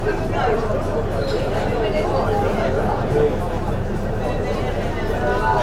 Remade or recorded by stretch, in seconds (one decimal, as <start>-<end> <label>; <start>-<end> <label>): 0.0-5.6 recorded